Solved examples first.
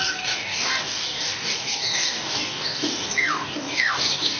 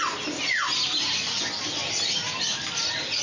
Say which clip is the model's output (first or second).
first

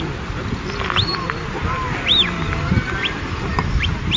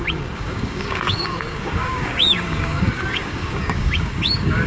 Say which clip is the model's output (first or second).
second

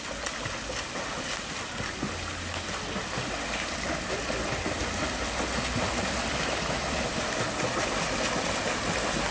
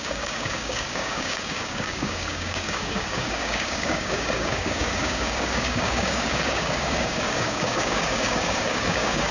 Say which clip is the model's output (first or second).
second